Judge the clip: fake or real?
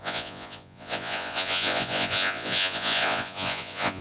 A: fake